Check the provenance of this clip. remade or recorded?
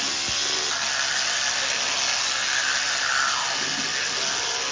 recorded